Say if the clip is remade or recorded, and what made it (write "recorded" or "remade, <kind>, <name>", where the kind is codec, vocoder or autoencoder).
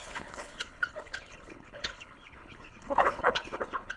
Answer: remade, codec, HILCodec